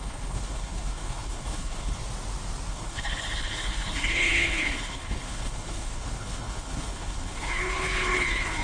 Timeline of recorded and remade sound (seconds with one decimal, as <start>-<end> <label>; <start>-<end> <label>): 0.0-2.0 remade; 2.0-2.7 recorded; 2.7-8.6 remade